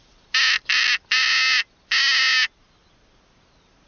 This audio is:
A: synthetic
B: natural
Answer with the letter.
B